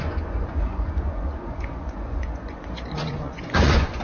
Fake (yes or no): yes